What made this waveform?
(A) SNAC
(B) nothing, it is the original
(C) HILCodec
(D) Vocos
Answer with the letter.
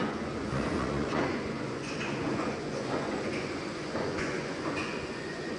D